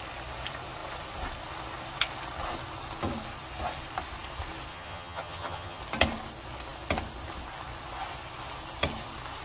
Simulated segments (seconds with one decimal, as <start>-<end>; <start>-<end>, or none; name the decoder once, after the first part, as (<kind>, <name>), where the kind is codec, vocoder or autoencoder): 4.7-5.8 (vocoder, HiFi-GAN)